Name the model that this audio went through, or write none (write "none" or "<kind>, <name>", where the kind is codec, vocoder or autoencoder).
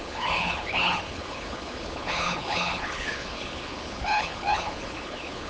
codec, HILCodec